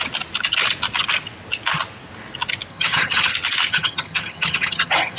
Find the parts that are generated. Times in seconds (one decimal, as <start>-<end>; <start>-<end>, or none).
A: 2.7-3.3; 3.7-5.2